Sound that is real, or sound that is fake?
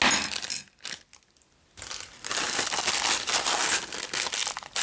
real